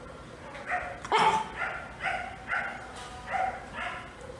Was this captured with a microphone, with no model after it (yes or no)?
yes